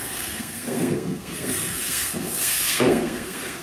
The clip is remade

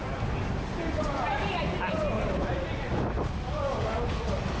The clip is recorded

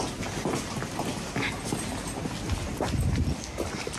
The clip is recorded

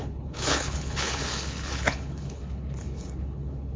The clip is remade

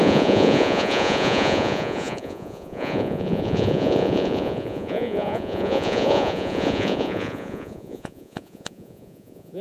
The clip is remade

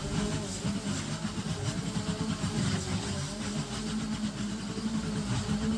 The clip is recorded